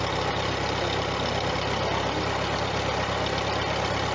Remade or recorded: recorded